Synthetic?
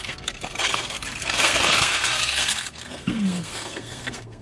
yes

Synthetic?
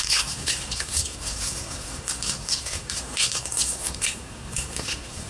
yes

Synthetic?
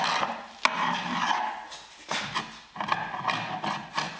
no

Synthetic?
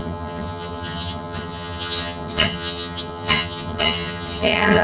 yes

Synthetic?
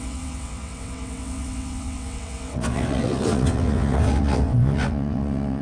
yes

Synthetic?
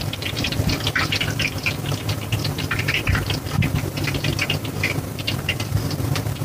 yes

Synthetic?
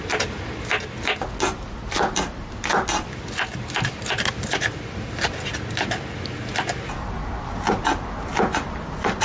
no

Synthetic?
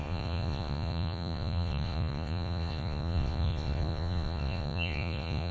yes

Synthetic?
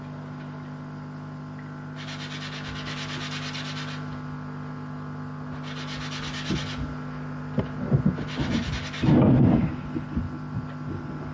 no